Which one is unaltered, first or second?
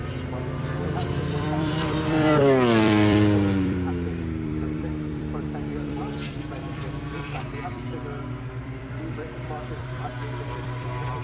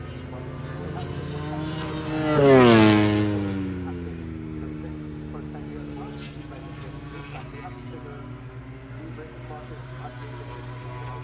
second